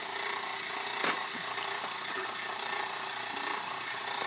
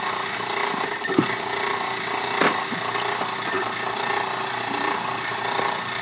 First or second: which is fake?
first